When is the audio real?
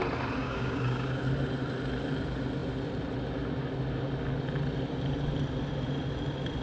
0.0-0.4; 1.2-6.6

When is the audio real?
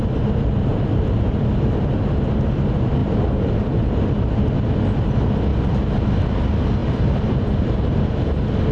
0.0-0.7; 1.4-3.0; 4.1-5.5; 6.1-6.8; 8.1-8.7